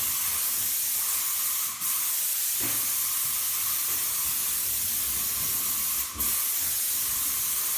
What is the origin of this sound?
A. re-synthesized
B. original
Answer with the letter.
B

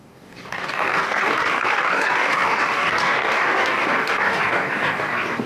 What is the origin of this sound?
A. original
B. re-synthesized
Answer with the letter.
B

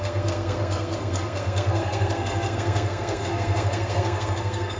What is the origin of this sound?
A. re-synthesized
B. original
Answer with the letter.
A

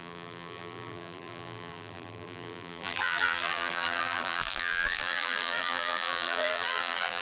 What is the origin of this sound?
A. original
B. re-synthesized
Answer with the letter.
B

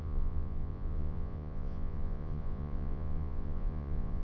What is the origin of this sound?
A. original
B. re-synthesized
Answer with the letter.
B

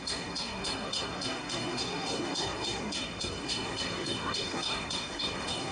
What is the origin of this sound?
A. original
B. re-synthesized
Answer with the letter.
B